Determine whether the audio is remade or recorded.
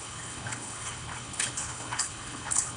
remade